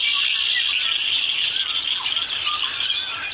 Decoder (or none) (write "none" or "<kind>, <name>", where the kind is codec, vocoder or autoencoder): none